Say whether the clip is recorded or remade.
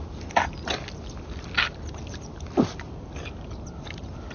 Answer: recorded